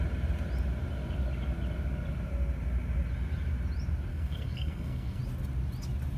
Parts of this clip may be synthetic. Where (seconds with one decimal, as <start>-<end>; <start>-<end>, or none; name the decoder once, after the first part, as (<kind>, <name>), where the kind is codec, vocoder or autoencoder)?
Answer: 4.1-5.2 (codec, SNAC)